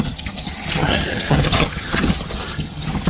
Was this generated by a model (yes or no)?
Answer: yes